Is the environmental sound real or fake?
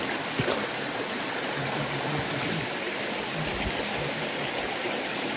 real